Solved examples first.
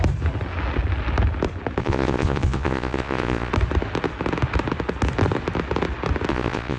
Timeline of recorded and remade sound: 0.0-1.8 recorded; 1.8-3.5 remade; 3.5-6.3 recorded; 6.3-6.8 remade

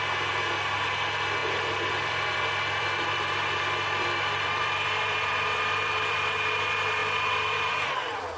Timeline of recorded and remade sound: 0.0-1.4 recorded; 1.4-5.6 remade; 5.6-8.4 recorded

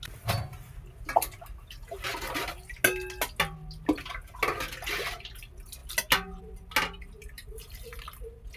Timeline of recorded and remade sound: 0.0-8.6 recorded

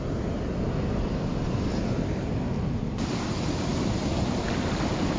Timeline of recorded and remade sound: 0.0-5.2 recorded

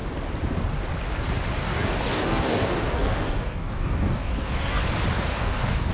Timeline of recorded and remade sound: 0.0-1.6 recorded; 1.6-4.8 remade; 4.8-5.3 recorded; 5.3-5.9 remade